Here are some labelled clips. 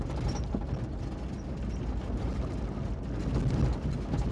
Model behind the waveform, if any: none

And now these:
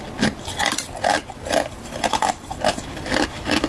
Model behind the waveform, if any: none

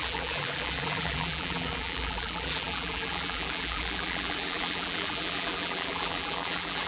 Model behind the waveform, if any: vocoder, BigVGAN v2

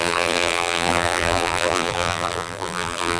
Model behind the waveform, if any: vocoder, BigVGAN v2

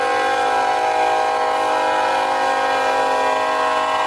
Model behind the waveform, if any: none